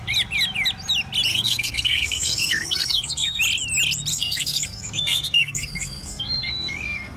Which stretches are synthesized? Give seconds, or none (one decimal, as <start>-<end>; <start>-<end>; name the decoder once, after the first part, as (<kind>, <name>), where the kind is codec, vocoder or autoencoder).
1.3-3.4 (codec, SNAC); 4.1-7.2